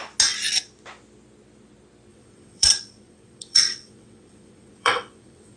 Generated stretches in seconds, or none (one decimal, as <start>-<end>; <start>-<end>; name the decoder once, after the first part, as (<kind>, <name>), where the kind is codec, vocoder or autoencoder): 2.1-5.6 (vocoder, WaveNeXt)